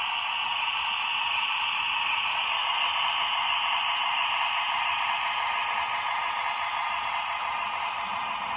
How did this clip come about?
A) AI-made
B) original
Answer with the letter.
B